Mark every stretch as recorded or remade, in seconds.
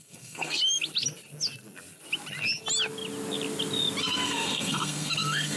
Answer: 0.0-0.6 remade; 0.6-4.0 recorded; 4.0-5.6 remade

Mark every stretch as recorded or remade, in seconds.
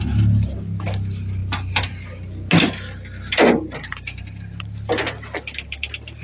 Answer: 0.0-6.2 recorded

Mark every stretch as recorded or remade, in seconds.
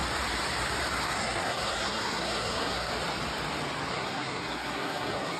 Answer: 0.0-1.0 recorded; 1.0-2.9 remade; 2.9-3.9 recorded; 3.9-5.4 remade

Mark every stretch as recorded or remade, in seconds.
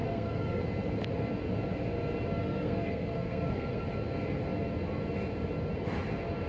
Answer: 0.0-0.6 remade; 0.6-2.4 recorded; 2.4-3.8 remade; 3.8-6.5 recorded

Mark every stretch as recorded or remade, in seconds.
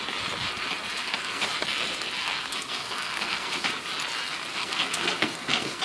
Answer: 0.0-1.0 recorded; 1.0-1.5 remade; 1.5-2.2 recorded; 2.2-3.8 remade; 3.8-4.5 recorded; 4.5-5.8 remade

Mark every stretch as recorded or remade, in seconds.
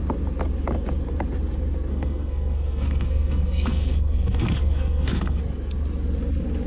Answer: 0.0-1.9 recorded; 1.9-5.4 remade; 5.4-6.7 recorded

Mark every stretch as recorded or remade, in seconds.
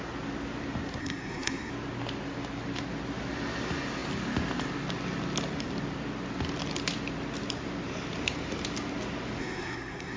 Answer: 0.0-1.0 recorded; 1.0-1.7 remade; 1.7-9.4 recorded; 9.4-10.2 remade